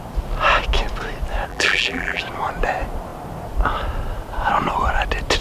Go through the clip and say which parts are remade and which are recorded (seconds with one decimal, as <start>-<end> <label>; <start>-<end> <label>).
0.0-1.5 recorded; 1.5-2.2 remade; 2.2-5.4 recorded